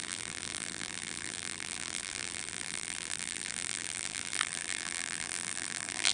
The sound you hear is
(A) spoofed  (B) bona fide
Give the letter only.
A